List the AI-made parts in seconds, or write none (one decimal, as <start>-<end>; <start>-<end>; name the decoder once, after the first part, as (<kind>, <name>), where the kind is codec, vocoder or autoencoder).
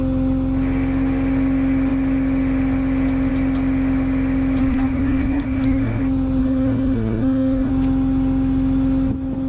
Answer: 4.6-6.0 (codec, SNAC); 6.4-7.7